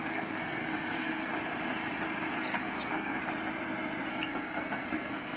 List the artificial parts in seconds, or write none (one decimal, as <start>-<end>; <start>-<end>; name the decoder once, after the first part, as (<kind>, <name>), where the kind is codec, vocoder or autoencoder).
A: 0.0-1.3 (codec, SNAC); 2.3-3.2; 4.1-5.4